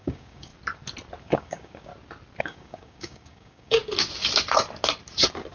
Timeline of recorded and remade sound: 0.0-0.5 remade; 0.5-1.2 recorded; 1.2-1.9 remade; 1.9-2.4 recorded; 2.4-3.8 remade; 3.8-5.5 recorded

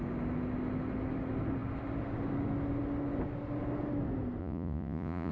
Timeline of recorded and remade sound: 0.0-4.4 recorded; 4.4-5.3 remade

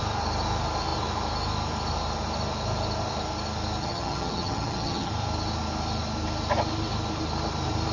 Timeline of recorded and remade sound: 0.0-3.8 recorded; 3.8-5.1 remade; 5.1-7.9 recorded